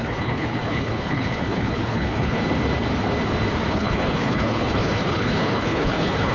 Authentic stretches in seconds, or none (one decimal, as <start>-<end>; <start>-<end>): 2.4-3.7